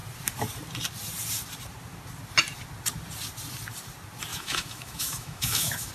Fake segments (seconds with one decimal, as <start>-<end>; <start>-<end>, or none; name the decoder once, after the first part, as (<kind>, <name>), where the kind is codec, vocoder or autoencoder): 4.3-5.9 (autoencoder, DAC-VAE)